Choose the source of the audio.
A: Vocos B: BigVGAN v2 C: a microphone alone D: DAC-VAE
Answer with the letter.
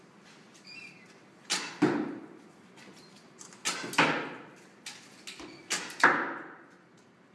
C